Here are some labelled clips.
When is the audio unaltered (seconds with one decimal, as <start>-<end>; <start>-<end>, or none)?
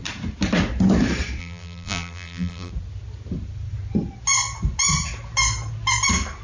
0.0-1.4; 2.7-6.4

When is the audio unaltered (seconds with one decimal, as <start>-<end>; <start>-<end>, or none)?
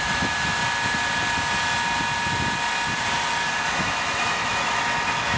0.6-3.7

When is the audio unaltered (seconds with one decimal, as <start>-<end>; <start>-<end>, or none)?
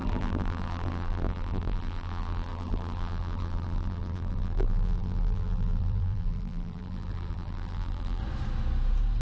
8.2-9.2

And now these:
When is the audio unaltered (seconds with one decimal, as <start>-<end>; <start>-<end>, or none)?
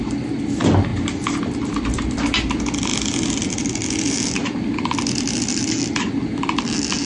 0.0-7.0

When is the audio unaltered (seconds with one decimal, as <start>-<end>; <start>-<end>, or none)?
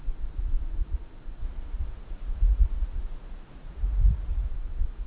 0.0-1.4; 4.5-5.1